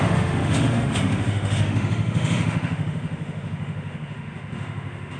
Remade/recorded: remade